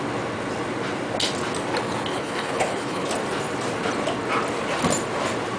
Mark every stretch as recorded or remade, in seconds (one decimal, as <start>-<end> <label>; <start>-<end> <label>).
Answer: 0.0-2.1 recorded; 2.1-3.1 remade; 3.1-5.6 recorded